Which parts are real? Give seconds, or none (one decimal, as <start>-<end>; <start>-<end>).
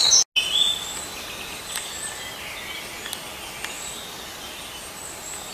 0.0-5.5